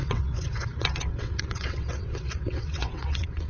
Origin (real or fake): fake